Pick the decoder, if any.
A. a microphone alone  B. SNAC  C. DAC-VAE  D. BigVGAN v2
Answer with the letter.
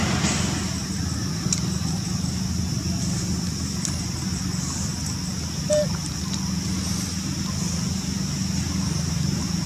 A